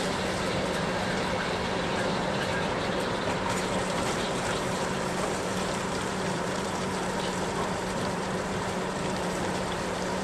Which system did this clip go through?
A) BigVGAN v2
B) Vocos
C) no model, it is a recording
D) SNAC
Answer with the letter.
A